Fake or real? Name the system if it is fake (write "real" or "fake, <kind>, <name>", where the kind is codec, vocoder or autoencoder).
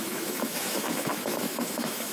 fake, autoencoder, DAC-VAE